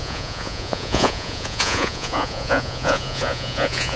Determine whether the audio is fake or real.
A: fake